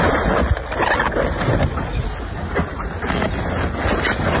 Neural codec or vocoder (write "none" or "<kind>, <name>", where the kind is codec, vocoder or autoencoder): none